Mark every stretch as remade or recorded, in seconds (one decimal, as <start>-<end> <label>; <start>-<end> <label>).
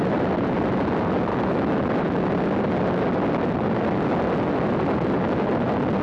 0.0-1.3 recorded; 1.3-1.9 remade; 1.9-6.0 recorded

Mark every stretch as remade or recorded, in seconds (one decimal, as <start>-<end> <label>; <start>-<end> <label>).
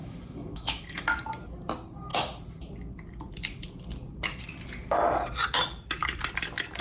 0.0-1.2 remade; 1.2-6.8 recorded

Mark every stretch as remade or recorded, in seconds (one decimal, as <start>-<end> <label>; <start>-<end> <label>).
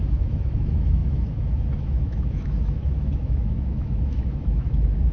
0.0-5.1 remade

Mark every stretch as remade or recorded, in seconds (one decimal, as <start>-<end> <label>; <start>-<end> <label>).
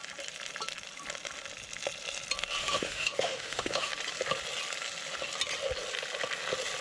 0.0-2.6 recorded; 2.6-3.9 remade; 3.9-6.8 recorded